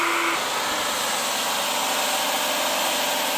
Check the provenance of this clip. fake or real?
real